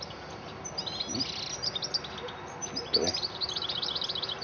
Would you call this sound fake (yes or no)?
no